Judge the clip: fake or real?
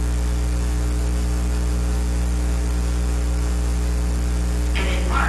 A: real